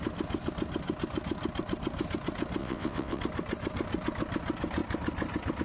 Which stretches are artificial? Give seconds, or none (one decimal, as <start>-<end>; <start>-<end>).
2.6-3.2